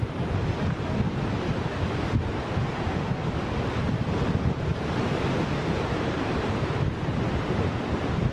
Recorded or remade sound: recorded